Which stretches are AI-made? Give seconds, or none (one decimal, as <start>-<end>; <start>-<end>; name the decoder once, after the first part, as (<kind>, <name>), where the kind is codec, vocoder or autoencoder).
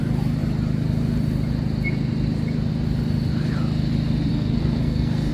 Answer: 4.3-5.3 (codec, SNAC)